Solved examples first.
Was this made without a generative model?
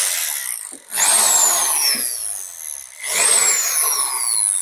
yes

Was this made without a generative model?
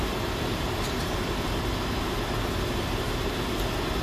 no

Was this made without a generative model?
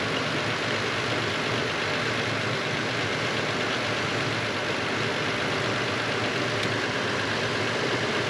yes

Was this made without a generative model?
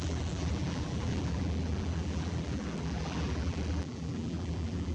no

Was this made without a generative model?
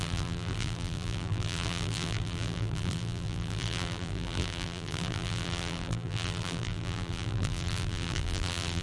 no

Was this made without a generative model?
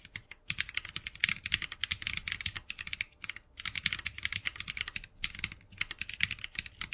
yes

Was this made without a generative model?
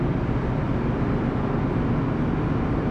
yes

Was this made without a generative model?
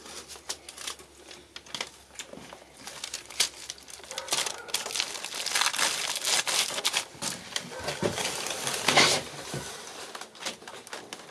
yes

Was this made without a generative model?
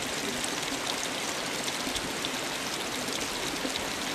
yes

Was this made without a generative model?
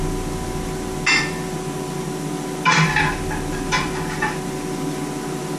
yes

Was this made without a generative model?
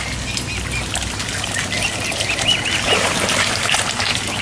yes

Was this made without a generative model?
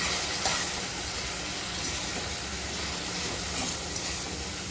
yes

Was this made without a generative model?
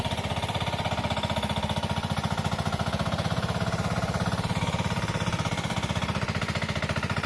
no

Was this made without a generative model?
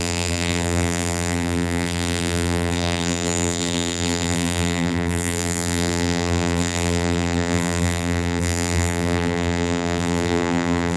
no